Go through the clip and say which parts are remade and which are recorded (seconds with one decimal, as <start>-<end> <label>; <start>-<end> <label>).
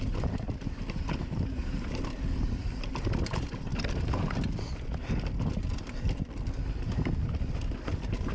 0.0-3.7 remade; 3.7-7.5 recorded; 7.5-8.3 remade